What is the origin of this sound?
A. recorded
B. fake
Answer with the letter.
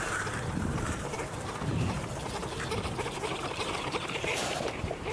B